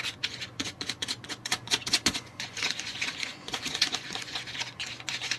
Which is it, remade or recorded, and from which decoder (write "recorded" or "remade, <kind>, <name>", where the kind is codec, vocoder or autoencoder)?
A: remade, vocoder, Vocos